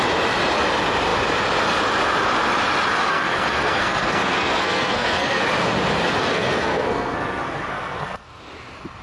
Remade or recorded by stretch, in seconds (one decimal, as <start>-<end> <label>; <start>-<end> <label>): 0.0-3.1 recorded; 3.1-5.4 remade; 5.4-6.2 recorded; 6.2-8.4 remade; 8.4-9.0 recorded